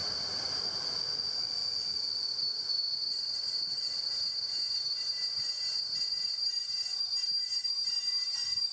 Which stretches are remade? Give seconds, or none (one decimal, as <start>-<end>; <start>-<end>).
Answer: none